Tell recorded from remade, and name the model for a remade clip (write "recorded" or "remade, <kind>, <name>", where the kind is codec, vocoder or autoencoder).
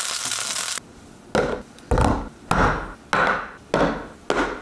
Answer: recorded